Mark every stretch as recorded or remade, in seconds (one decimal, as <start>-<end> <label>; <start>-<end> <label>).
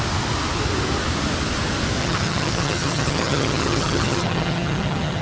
0.0-2.0 recorded; 2.0-5.2 remade